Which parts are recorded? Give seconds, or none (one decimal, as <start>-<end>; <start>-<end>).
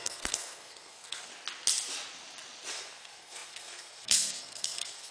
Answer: 1.3-2.7